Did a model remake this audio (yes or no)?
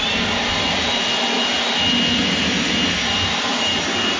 no